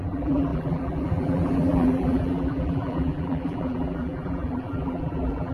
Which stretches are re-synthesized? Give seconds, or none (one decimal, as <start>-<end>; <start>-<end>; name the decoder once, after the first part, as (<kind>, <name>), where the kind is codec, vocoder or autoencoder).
0.0-5.5 (vocoder, BigVGAN v2)

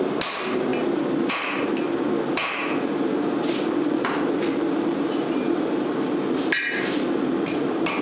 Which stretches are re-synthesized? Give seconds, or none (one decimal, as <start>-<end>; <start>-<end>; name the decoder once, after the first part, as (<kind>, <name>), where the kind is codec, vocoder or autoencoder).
2.4-7.0 (vocoder, BigVGAN v2)

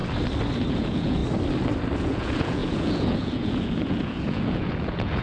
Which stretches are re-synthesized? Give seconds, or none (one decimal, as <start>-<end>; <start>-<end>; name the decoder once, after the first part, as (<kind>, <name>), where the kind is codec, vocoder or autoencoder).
0.7-1.2 (vocoder, Vocos); 2.0-5.2

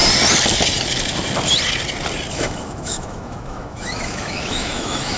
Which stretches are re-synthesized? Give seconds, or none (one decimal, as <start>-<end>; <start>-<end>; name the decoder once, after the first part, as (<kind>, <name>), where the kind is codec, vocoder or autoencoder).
2.3-5.2 (autoencoder, DAC-VAE)